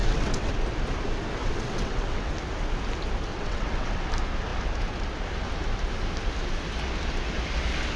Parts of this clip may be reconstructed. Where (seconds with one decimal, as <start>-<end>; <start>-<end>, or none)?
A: 0.0-0.5; 1.4-2.3; 3.3-4.0